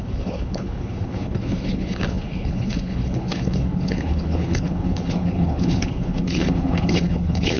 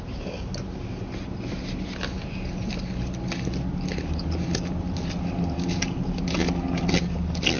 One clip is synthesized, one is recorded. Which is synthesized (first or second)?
first